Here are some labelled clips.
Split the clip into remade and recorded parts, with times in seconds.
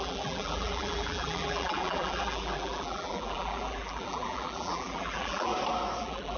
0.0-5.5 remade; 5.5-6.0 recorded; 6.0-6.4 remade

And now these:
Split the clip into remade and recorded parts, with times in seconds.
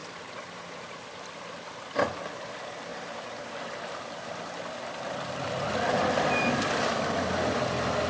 0.0-1.0 remade; 1.0-2.9 recorded; 2.9-4.4 remade; 4.4-8.1 recorded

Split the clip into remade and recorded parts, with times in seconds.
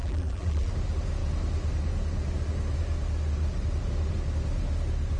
0.0-0.7 remade; 0.7-5.2 recorded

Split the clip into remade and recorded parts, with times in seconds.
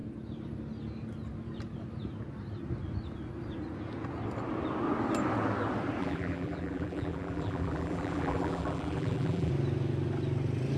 0.0-6.0 recorded; 6.0-9.5 remade; 9.5-10.8 recorded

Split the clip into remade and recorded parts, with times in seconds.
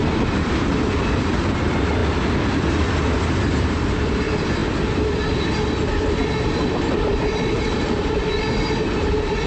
0.0-4.6 remade; 4.6-5.2 recorded; 5.2-9.5 remade